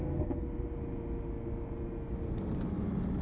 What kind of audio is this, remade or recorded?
recorded